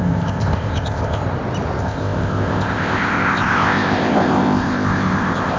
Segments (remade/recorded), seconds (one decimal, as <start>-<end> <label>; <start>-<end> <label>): 0.0-1.2 remade; 1.2-1.8 recorded; 1.8-5.6 remade